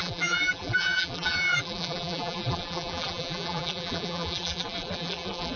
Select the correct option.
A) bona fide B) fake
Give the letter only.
B